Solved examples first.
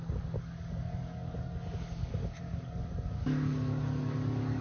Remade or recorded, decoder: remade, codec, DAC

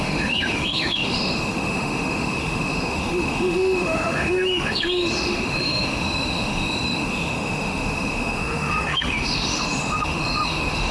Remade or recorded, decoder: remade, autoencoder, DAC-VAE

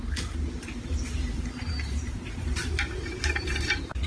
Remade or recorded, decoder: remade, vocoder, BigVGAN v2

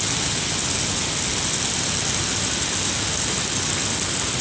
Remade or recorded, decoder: recorded